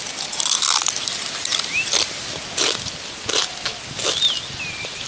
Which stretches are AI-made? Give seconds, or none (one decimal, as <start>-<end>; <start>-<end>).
none